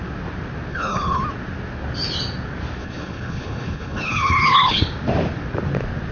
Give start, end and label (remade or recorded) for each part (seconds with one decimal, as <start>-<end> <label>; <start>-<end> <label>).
0.0-0.7 recorded; 0.7-1.2 remade; 1.2-2.8 recorded; 2.8-4.8 remade; 4.8-6.1 recorded